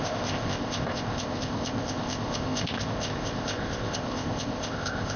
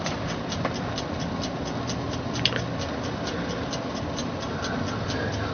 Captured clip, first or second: second